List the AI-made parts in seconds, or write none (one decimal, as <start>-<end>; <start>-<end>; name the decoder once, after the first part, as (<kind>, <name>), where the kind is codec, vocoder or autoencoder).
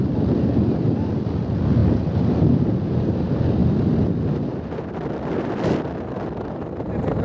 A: 0.0-3.6 (vocoder, BigVGAN v2); 5.3-7.2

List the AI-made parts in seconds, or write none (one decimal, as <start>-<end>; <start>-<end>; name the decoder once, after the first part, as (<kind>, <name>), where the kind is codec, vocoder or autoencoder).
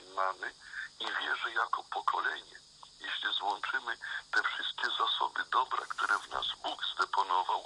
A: 1.6-4.0 (vocoder, BigVGAN v2)